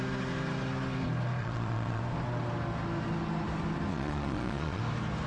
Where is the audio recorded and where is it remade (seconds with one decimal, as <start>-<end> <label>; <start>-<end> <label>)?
0.0-1.4 recorded; 1.4-2.0 remade; 2.0-3.9 recorded; 3.9-4.8 remade; 4.8-5.3 recorded